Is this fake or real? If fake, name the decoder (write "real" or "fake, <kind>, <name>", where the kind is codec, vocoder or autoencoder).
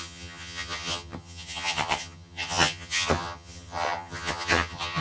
fake, vocoder, HiFi-GAN